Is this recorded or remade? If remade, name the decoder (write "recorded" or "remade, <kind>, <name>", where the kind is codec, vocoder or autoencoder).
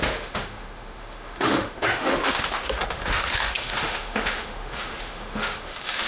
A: remade, autoencoder, DAC-VAE